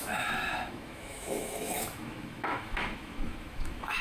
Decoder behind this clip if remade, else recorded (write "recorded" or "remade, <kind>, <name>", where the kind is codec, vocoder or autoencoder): remade, autoencoder, DAC-VAE